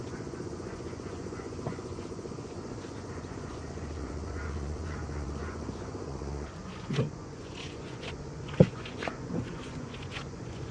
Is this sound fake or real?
fake